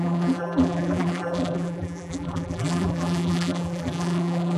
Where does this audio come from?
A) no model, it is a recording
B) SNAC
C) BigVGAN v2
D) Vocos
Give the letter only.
C